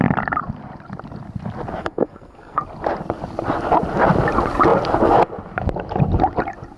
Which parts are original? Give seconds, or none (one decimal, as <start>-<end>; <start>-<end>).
0.0-1.8; 2.6-6.8

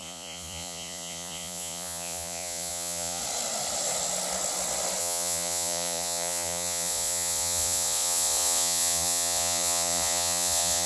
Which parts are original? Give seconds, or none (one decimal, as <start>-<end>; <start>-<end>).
3.2-5.0

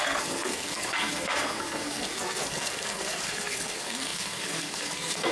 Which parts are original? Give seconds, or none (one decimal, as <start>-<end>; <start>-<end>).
none